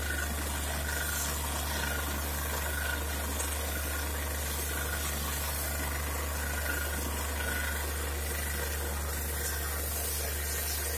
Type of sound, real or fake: real